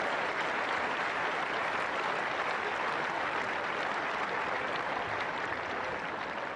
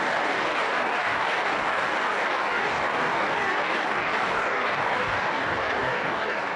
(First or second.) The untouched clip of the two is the first